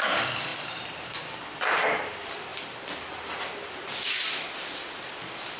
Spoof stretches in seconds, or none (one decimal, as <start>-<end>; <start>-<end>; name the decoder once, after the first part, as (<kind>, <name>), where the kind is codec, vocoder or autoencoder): 0.0-5.6 (vocoder, BigVGAN v2)